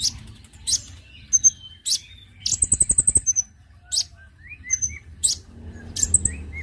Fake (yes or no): no